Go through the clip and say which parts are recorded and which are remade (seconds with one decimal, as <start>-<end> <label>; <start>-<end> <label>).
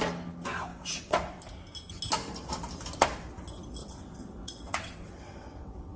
0.0-0.7 recorded; 0.7-1.4 remade; 1.4-3.8 recorded; 3.8-6.0 remade